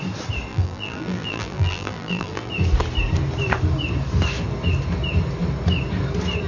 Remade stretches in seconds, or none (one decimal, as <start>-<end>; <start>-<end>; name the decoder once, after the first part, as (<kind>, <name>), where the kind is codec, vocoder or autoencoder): 0.5-2.5 (vocoder, BigVGAN v2)